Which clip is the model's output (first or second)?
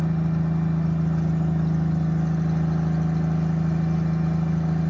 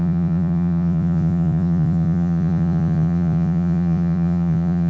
second